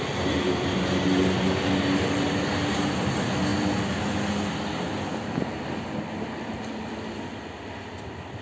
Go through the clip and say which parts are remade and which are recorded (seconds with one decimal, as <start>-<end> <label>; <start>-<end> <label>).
0.0-8.4 recorded

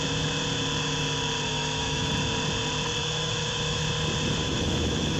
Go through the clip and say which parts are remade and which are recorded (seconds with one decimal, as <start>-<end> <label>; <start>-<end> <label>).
0.0-1.5 recorded; 1.5-2.1 remade; 2.1-3.0 recorded; 3.0-3.8 remade; 3.8-4.4 recorded; 4.4-5.2 remade